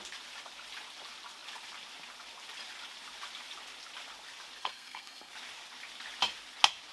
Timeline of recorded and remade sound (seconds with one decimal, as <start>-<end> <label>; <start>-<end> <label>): 0.0-4.6 recorded; 4.6-5.3 remade; 5.3-6.9 recorded